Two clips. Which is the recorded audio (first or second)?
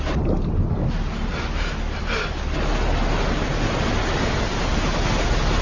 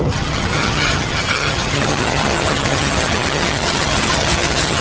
first